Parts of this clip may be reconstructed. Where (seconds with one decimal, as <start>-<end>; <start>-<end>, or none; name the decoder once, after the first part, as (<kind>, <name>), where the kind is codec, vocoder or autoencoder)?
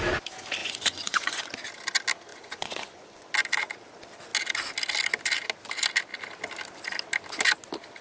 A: 0.6-1.5 (vocoder, Vocos); 2.3-3.3